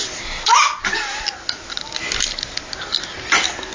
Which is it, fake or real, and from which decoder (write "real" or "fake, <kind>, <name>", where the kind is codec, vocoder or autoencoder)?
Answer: real